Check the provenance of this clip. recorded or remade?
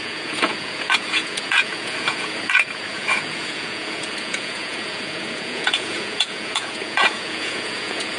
remade